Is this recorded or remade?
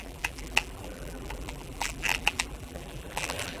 remade